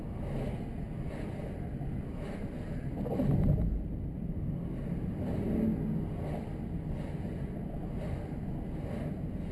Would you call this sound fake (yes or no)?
no